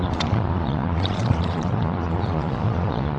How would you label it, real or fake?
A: fake